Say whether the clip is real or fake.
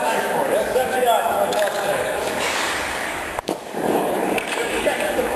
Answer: fake